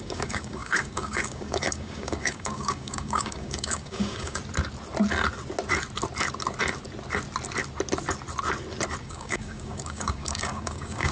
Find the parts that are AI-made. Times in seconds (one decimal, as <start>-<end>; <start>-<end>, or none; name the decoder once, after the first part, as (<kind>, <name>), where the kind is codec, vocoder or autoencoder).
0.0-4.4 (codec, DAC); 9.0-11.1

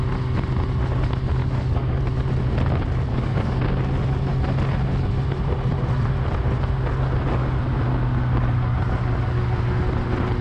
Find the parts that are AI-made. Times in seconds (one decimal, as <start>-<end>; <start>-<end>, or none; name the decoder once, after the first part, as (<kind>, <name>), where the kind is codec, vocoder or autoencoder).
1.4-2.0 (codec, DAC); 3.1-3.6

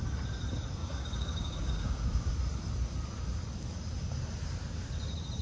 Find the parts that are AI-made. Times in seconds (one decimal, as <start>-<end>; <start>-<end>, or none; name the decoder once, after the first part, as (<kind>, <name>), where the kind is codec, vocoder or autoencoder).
0.8-2.3 (codec, DAC)